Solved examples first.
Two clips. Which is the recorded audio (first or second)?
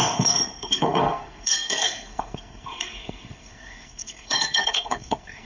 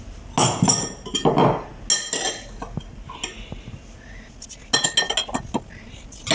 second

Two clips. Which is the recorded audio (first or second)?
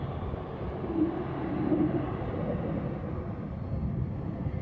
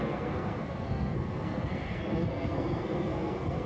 first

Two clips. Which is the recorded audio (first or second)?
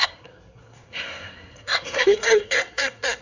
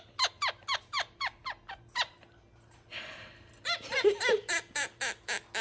second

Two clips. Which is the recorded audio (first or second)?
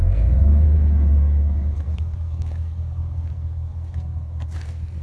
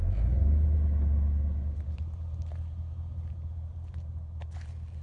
second